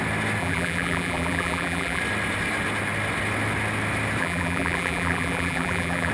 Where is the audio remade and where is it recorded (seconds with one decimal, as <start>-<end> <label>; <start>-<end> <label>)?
0.0-0.4 recorded; 0.4-2.0 remade; 2.0-4.2 recorded; 4.2-6.1 remade